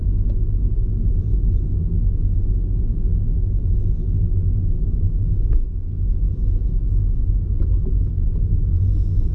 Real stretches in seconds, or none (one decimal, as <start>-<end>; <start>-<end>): 0.0-9.3